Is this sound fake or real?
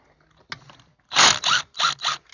real